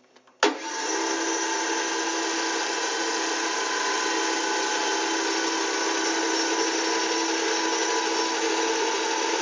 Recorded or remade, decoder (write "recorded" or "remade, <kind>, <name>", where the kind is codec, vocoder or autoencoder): recorded